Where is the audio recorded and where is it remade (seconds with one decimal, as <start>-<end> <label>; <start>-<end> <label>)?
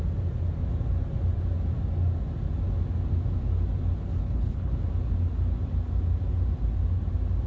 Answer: 0.0-4.1 recorded; 4.1-4.7 remade; 4.7-7.5 recorded